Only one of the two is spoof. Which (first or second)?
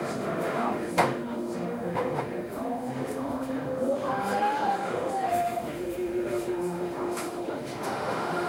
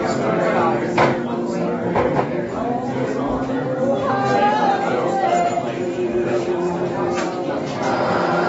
first